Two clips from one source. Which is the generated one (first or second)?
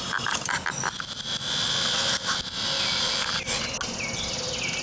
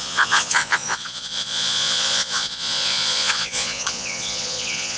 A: second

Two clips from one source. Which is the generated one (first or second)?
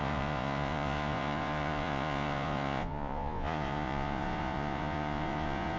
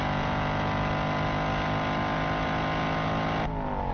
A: first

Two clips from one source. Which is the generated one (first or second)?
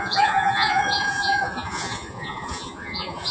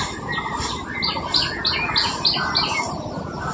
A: first